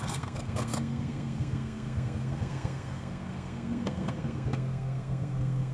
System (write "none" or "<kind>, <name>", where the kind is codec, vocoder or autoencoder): codec, SNAC